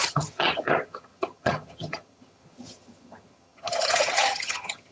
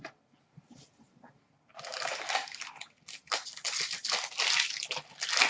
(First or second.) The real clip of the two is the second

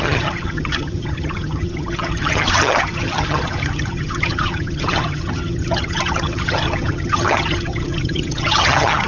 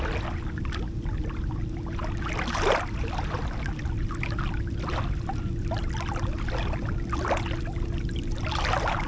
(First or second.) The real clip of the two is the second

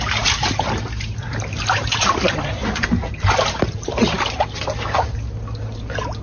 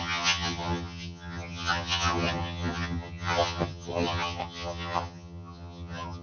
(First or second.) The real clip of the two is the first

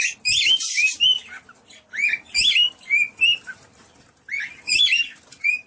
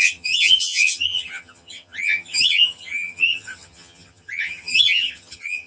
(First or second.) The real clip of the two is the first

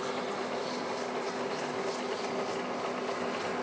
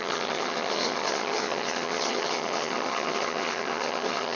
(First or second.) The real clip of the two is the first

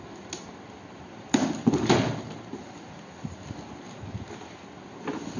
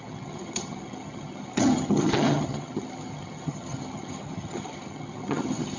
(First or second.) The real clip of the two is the first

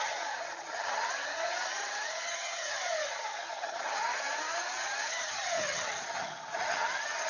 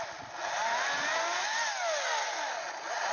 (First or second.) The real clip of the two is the second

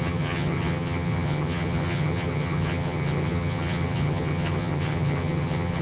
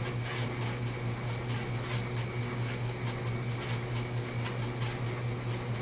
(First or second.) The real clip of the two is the second